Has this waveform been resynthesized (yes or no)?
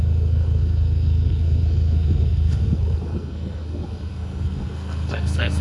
yes